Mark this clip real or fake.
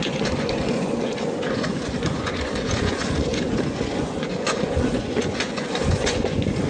fake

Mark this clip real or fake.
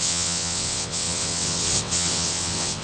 fake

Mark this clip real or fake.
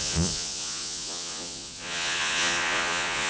fake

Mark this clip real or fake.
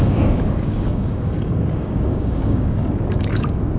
fake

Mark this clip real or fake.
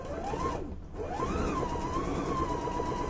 real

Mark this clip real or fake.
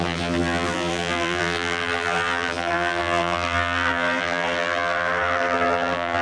fake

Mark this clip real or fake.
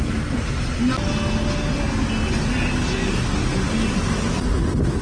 real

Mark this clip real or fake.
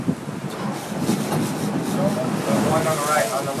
real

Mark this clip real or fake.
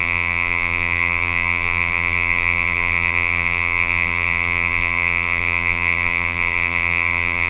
fake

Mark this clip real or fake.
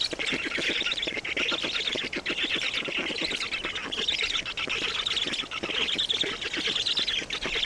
real